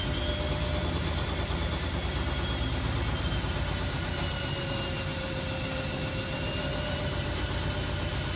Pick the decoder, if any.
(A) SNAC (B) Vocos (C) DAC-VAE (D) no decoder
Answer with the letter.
D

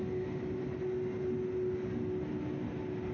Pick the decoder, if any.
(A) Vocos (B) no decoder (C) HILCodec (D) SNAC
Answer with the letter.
B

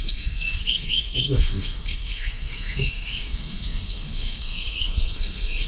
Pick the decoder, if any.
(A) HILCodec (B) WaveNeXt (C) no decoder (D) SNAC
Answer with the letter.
D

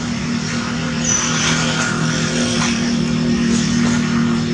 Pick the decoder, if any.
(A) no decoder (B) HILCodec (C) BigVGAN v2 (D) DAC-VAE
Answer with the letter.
A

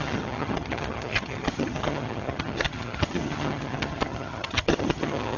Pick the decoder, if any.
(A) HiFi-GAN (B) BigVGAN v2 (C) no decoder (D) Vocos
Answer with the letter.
A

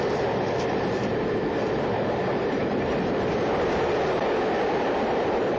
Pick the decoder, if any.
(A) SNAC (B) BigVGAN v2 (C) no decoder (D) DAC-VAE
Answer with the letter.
B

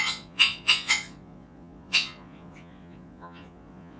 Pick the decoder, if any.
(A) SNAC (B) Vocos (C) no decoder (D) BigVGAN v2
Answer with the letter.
B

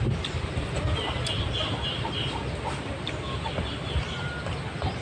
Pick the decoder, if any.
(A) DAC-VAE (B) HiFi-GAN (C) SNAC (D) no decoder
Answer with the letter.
D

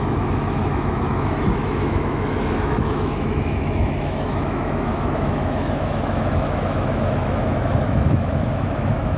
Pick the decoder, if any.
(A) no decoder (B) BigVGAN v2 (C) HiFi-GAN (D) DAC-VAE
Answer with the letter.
D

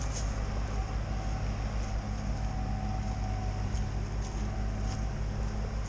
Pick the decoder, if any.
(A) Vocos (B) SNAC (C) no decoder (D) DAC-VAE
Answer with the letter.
C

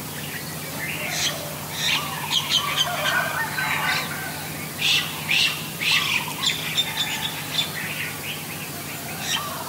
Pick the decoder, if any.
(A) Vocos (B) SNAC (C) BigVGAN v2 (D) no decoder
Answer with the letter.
D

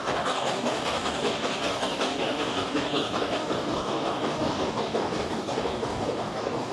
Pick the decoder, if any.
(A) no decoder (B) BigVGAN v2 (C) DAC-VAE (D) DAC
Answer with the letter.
D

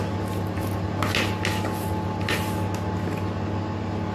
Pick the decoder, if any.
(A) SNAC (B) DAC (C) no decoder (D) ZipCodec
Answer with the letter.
C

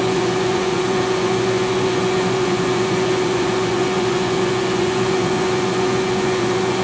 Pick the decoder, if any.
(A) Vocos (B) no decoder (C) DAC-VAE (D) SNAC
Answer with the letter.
A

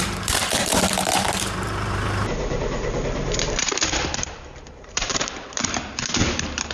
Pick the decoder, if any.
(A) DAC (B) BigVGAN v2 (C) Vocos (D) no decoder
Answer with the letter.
B